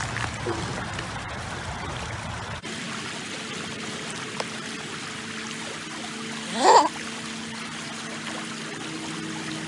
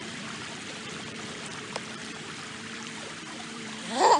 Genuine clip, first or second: first